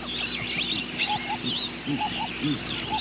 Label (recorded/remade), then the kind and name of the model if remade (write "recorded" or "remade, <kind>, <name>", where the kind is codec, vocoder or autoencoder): recorded